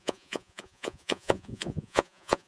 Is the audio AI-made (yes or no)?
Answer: yes